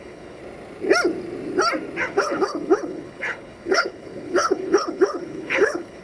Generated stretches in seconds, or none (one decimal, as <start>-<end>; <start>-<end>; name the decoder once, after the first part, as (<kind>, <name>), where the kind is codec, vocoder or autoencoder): 0.0-0.4 (codec, HILCodec); 2.0-6.0